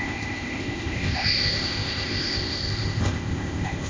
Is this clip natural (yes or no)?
no